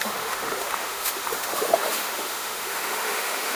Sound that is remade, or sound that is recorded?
remade